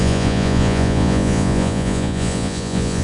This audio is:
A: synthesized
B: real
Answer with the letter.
A